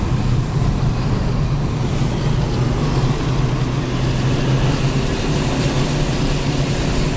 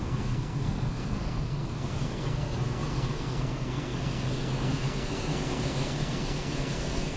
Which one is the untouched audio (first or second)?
first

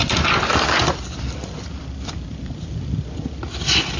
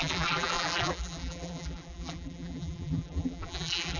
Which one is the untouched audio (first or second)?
first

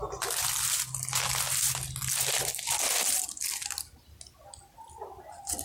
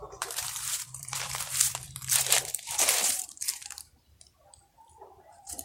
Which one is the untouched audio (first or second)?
first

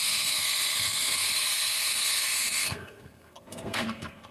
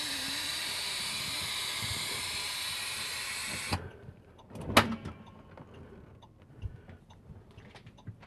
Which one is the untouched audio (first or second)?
second